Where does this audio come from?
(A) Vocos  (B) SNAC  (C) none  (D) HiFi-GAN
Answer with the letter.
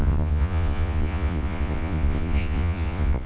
A